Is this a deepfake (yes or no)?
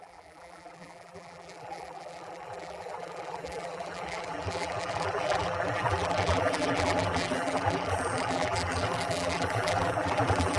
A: yes